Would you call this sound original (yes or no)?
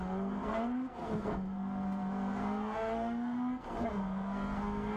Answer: no